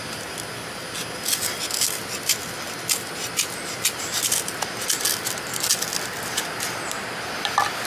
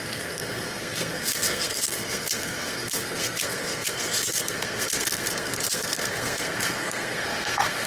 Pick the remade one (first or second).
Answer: second